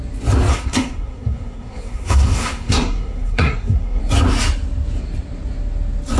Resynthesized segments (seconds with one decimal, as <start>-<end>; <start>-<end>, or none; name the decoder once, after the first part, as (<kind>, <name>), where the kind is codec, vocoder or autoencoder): 0.5-4.0 (codec, SNAC)